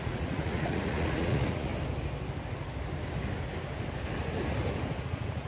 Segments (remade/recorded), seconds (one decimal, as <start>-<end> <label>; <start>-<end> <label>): 0.0-1.7 remade; 1.7-5.0 recorded; 5.0-5.5 remade